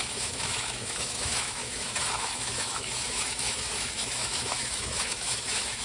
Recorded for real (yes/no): no